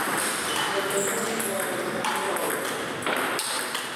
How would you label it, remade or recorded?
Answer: recorded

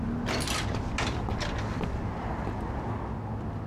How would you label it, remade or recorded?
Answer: recorded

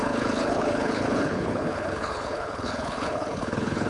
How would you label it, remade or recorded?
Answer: remade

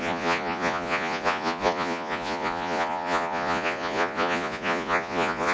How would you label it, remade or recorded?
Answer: remade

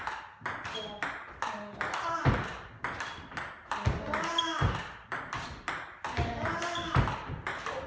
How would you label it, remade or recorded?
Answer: recorded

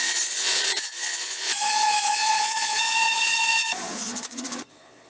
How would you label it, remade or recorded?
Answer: remade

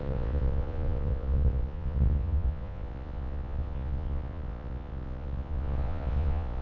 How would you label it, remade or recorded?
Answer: remade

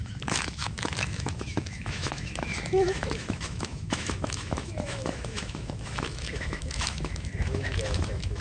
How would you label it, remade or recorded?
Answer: remade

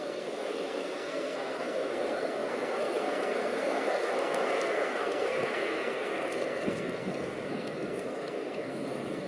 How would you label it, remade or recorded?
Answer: remade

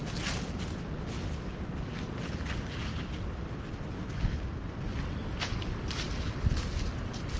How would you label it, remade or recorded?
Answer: recorded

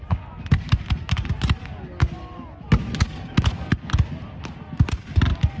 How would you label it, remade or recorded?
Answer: recorded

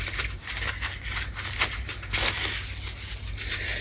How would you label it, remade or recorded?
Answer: recorded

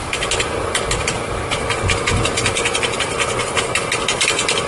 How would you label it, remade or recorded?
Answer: remade